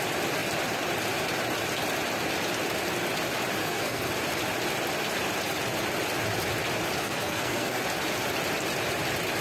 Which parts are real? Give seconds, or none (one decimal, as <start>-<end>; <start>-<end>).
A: 0.0-3.6; 4.1-7.0; 7.8-9.4